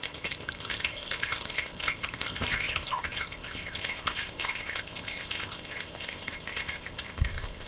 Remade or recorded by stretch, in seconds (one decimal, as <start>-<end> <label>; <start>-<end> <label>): 0.0-7.7 remade